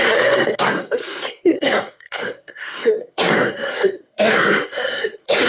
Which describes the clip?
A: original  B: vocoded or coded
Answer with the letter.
B